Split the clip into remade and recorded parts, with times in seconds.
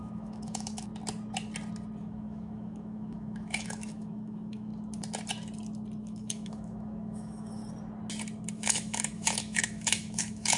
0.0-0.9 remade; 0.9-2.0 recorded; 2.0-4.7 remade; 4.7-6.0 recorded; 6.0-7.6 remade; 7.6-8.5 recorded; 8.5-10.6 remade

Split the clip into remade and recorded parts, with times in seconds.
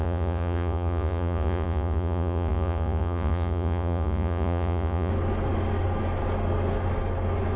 0.0-5.1 remade; 5.1-7.6 recorded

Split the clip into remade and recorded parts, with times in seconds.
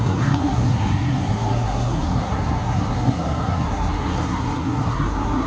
0.0-5.5 remade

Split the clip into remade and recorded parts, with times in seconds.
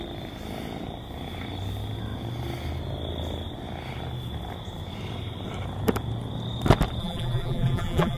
0.0-7.0 recorded; 7.0-8.2 remade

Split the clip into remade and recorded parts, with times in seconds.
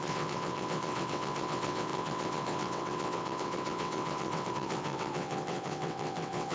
0.0-6.5 remade